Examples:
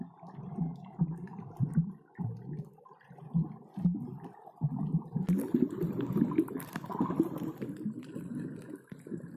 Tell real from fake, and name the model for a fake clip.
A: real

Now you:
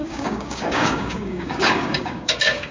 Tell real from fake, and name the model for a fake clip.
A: fake, codec, DAC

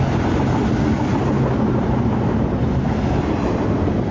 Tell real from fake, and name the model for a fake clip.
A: real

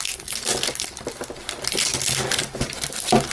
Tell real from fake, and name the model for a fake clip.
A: real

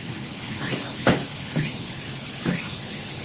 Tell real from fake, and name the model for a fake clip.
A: fake, codec, HILCodec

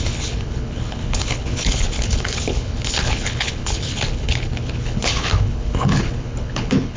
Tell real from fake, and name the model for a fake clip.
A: fake, codec, HILCodec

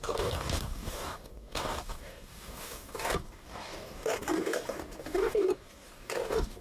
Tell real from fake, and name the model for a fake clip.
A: fake, codec, DAC